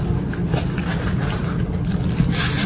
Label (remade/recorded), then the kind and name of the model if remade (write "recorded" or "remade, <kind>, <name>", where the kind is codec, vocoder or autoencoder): recorded